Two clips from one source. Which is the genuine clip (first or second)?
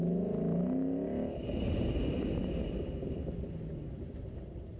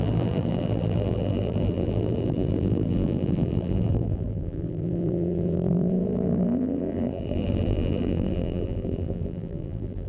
first